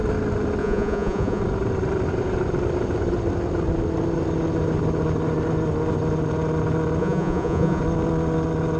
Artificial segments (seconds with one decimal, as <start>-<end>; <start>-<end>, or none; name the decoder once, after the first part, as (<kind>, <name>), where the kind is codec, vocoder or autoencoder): 0.6-1.4 (vocoder, Vocos); 7.0-7.8